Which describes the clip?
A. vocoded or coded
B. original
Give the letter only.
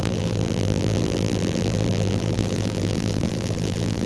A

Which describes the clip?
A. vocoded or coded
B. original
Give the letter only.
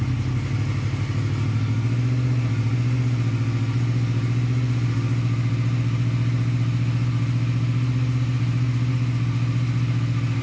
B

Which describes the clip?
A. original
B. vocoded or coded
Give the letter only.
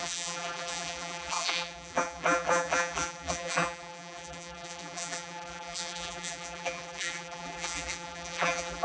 B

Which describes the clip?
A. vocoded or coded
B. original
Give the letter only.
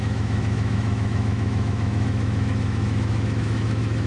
A